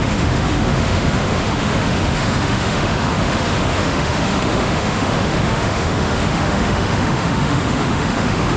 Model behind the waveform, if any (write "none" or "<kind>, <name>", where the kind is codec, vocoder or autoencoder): autoencoder, DAC-VAE